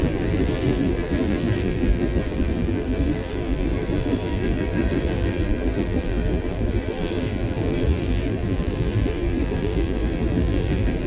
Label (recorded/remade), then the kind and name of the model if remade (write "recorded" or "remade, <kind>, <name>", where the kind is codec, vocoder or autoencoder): remade, vocoder, BigVGAN v2